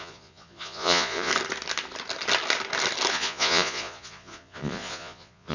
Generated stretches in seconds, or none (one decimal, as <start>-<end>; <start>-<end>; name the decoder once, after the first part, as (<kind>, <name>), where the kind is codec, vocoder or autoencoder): 0.0-1.3 (vocoder, Vocos); 3.1-5.5